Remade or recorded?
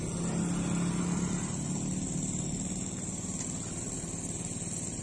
recorded